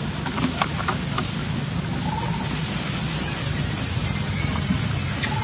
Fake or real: real